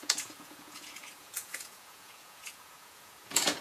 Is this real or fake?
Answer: fake